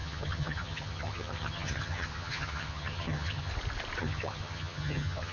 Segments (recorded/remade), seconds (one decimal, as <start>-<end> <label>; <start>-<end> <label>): 0.0-3.5 remade; 3.5-4.0 recorded; 4.0-5.3 remade